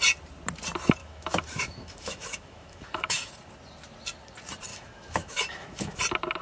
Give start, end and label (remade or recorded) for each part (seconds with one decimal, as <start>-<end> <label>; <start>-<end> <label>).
0.0-1.0 recorded; 1.0-3.3 remade; 3.3-4.7 recorded; 4.7-6.0 remade; 6.0-6.4 recorded